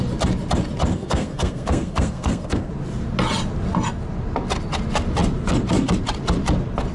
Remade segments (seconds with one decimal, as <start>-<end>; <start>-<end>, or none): 0.9-2.7